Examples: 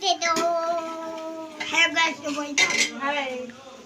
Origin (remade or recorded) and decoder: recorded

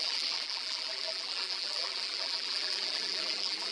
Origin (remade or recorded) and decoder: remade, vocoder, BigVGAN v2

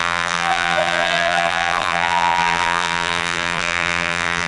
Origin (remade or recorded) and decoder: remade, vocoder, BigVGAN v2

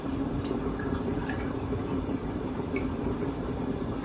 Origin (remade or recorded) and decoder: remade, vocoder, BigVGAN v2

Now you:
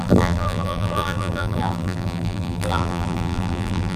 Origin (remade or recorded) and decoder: remade, vocoder, BigVGAN v2